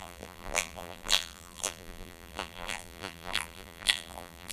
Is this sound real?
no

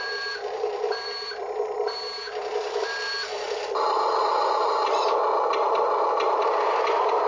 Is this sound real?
no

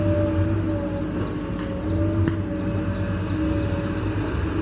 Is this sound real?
yes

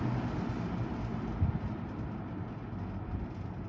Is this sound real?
yes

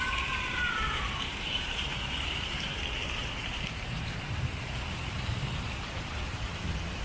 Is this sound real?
no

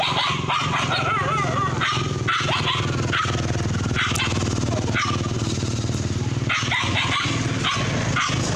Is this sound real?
yes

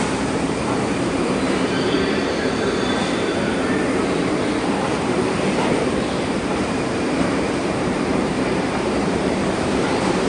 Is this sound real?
no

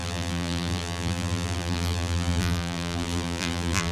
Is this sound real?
no